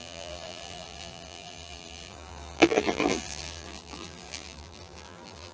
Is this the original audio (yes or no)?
no